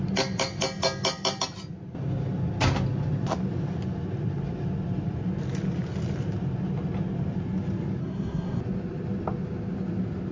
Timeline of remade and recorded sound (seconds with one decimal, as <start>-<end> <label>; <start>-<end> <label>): 0.0-8.0 recorded; 8.0-8.6 remade; 8.6-10.3 recorded